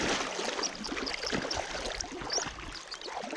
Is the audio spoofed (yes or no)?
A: no